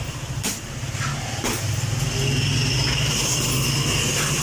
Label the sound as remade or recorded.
recorded